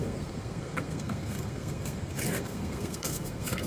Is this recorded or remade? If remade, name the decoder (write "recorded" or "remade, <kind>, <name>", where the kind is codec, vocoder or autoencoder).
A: remade, codec, SNAC